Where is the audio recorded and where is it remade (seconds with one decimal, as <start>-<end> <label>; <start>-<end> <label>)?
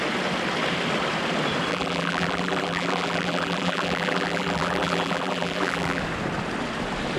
0.0-1.7 recorded; 1.7-6.0 remade; 6.0-7.2 recorded